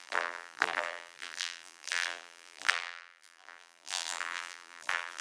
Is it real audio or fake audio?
fake